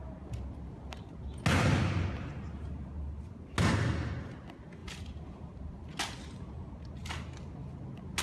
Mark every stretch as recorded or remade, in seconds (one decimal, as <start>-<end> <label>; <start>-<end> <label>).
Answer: 0.0-8.2 recorded